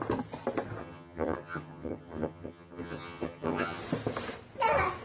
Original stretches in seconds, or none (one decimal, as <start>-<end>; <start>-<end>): 0.0-0.8; 3.8-5.0